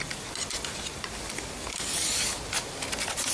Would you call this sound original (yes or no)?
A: yes